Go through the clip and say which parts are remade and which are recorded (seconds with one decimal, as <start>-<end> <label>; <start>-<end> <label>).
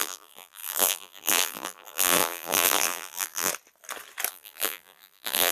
0.0-3.5 remade; 3.5-4.3 recorded; 4.3-5.5 remade